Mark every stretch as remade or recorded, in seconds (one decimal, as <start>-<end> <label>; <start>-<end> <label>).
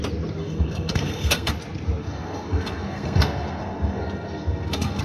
0.0-0.4 recorded; 0.4-1.5 remade; 1.5-2.0 recorded; 2.0-5.0 remade